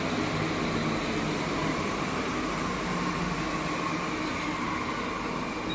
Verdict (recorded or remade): recorded